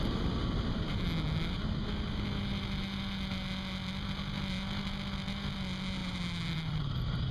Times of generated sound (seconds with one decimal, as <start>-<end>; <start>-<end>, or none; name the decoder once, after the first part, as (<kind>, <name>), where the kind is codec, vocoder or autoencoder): 6.0-6.8 (vocoder, BigVGAN v2)